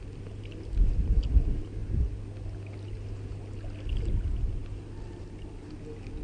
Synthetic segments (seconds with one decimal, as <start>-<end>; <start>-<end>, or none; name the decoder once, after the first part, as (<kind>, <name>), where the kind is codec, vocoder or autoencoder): none